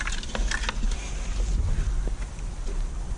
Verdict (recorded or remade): recorded